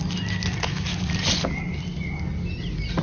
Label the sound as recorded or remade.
recorded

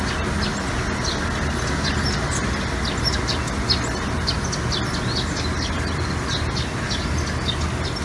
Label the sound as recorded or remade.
recorded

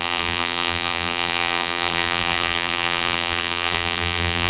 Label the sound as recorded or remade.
remade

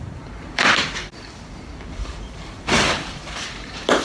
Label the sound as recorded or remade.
remade